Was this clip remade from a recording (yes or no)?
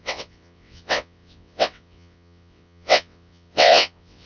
yes